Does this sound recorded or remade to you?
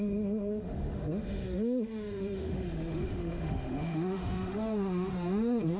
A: remade